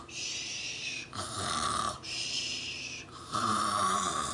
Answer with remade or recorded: remade